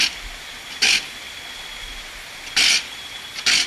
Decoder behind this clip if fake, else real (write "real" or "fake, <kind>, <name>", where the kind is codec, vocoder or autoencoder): real